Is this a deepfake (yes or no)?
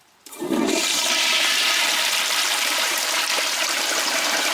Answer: yes